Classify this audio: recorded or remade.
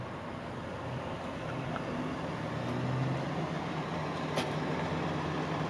recorded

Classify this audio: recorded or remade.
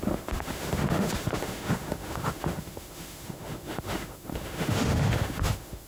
remade